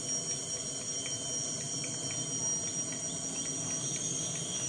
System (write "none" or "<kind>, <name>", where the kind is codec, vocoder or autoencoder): none